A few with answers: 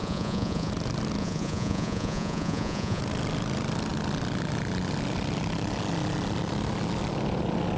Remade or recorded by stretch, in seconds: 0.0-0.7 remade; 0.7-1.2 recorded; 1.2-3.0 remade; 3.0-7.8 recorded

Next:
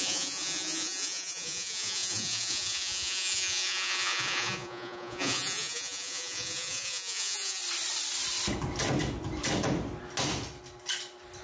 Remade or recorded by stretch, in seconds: 0.0-7.6 remade; 7.6-11.4 recorded

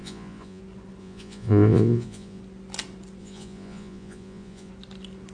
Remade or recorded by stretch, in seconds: 0.0-0.6 remade; 0.6-1.0 recorded; 1.0-2.4 remade; 2.4-3.2 recorded; 3.2-4.7 remade; 4.7-5.3 recorded